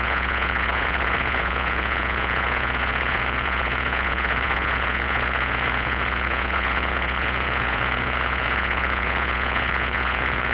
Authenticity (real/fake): fake